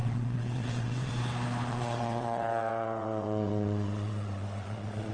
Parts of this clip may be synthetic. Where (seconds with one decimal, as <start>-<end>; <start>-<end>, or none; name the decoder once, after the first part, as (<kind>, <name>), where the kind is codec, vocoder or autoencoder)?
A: 0.0-1.1 (vocoder, WaveNeXt); 1.7-5.1